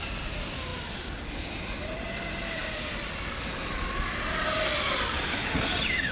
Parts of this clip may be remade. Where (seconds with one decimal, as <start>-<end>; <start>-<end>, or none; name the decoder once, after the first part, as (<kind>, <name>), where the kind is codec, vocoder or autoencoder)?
none